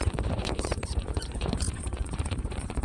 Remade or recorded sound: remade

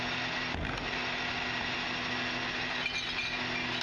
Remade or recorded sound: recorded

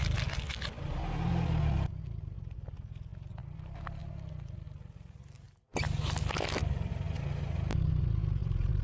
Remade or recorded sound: recorded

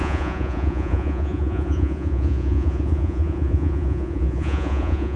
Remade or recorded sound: remade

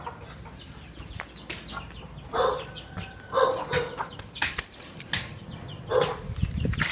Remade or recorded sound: recorded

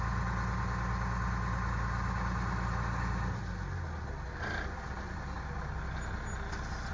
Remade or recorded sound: recorded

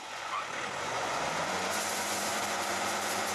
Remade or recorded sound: remade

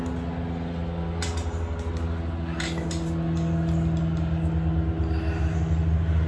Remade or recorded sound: recorded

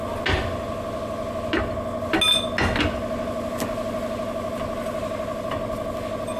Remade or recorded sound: recorded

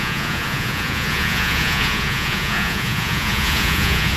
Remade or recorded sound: remade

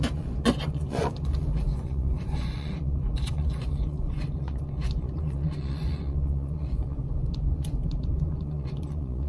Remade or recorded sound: remade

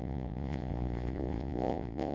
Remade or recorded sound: remade